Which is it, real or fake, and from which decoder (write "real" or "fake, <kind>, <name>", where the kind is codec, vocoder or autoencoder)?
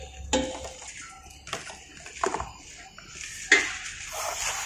real